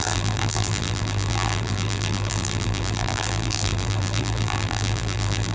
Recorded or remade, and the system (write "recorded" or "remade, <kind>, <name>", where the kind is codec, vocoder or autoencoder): remade, vocoder, BigVGAN v2